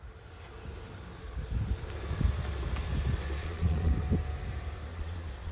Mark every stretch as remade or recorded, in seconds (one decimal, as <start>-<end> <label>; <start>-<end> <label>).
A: 0.0-3.4 recorded; 3.4-3.9 remade; 3.9-4.9 recorded; 4.9-5.5 remade

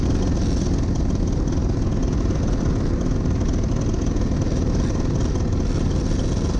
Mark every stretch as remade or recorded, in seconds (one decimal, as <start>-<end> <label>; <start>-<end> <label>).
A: 0.0-6.6 recorded